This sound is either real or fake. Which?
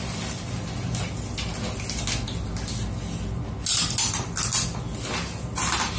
real